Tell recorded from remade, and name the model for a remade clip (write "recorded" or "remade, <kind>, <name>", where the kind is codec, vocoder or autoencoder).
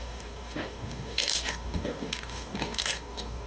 remade, codec, DAC